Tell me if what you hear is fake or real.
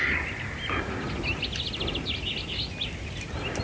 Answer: real